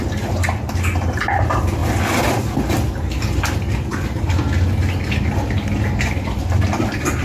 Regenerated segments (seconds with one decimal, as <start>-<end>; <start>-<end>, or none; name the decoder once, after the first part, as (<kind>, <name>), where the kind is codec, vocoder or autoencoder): none